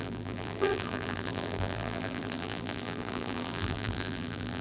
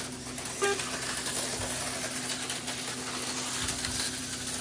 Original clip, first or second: second